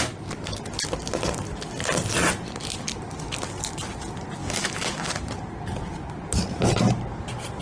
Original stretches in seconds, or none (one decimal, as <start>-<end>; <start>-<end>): 0.0-4.4; 5.1-7.6